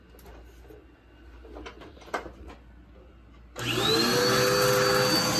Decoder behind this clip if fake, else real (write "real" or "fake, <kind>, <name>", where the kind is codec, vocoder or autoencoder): real